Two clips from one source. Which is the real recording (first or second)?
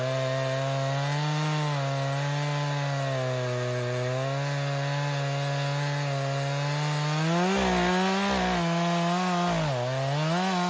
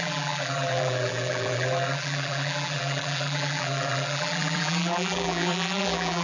first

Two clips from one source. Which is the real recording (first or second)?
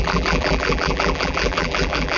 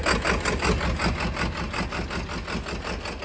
second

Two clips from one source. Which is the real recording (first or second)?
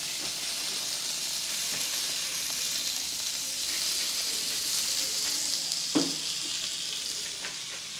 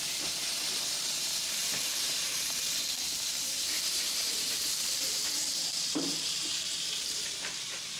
first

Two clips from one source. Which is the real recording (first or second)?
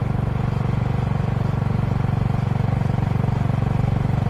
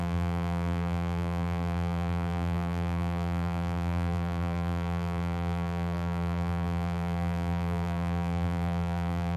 first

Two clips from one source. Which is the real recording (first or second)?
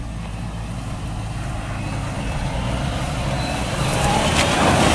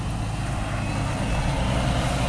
second